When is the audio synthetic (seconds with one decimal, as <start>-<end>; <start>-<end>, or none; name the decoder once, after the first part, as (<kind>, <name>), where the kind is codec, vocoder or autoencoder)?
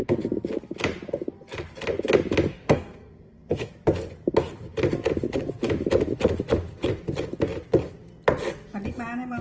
2.5-3.7 (codec, SNAC)